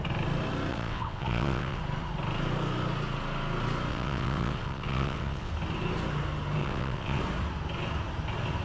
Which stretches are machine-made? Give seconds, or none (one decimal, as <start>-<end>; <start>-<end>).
0.7-1.8; 3.9-5.5; 6.6-7.2